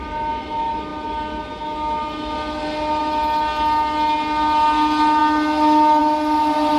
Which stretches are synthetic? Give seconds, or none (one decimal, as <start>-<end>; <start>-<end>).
none